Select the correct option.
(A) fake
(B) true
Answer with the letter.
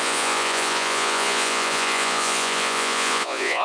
A